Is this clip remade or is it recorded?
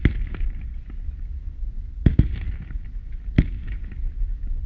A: recorded